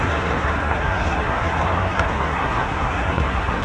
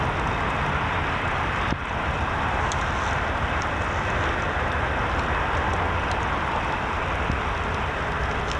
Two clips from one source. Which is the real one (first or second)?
second